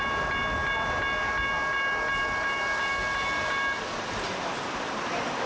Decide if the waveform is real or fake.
real